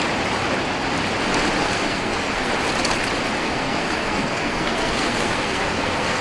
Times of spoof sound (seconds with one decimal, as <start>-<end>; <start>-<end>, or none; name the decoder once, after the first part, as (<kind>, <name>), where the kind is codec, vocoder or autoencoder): 1.6-2.5 (codec, SNAC); 3.4-6.2